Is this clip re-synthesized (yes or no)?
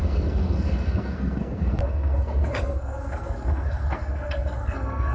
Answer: yes